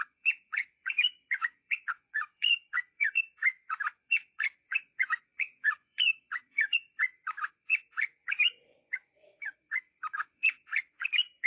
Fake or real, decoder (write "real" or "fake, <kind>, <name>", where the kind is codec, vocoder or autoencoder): fake, vocoder, Vocos